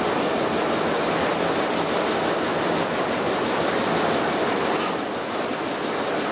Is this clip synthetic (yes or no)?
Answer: no